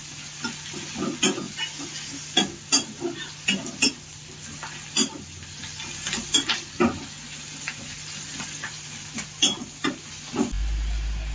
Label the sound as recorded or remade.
recorded